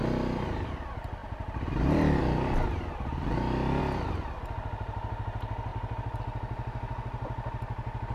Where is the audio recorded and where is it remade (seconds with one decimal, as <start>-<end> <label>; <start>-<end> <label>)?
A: 0.0-0.7 remade; 0.7-1.2 recorded; 1.2-2.2 remade; 2.2-5.7 recorded; 5.7-6.2 remade; 6.2-8.1 recorded